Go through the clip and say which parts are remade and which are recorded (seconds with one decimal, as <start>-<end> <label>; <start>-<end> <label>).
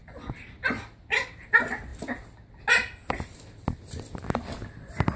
0.0-5.2 recorded